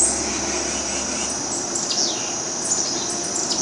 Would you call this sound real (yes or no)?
yes